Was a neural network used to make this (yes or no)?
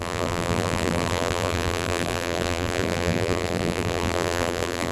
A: yes